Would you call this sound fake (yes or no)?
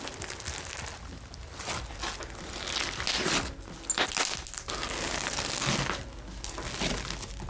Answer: no